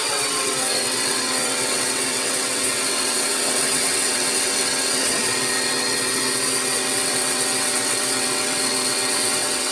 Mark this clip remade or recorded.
remade